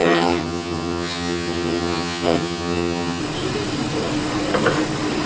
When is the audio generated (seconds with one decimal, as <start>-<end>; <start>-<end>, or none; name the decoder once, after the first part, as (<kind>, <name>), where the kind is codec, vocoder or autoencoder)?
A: 0.0-3.2 (vocoder, HiFi-GAN)